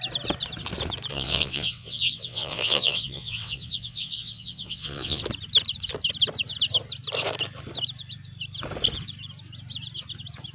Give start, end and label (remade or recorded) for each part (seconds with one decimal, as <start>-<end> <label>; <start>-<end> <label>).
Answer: 0.0-1.1 recorded; 1.1-5.2 remade; 5.2-10.5 recorded